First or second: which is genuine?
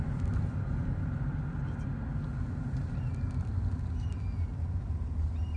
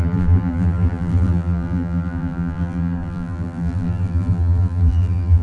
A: first